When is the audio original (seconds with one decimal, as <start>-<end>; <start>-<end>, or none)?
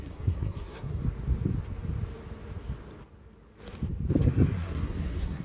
1.0-4.2